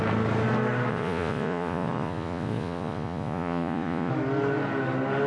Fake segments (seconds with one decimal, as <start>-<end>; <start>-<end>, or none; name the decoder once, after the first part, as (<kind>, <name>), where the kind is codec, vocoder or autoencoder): 0.9-4.1 (vocoder, Vocos)